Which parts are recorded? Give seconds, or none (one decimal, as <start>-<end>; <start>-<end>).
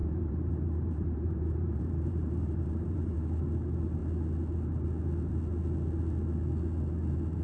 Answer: 3.4-7.4